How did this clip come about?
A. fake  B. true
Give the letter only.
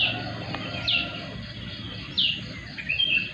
B